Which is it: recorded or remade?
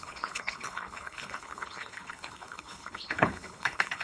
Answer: remade